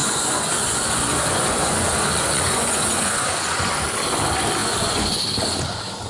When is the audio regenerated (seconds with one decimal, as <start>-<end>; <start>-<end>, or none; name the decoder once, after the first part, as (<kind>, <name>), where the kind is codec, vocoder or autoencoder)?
0.0-3.7 (vocoder, Vocos); 4.6-5.2